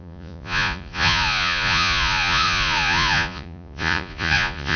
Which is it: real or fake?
fake